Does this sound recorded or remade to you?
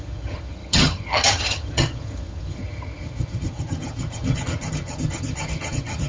remade